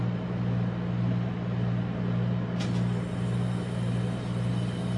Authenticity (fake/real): real